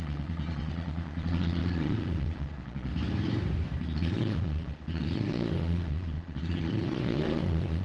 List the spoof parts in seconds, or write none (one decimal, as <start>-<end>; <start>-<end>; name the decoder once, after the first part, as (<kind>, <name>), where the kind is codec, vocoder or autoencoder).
0.0-2.9 (vocoder, Vocos); 3.8-7.8